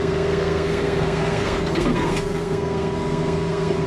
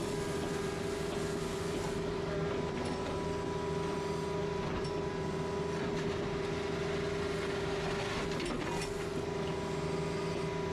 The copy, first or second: first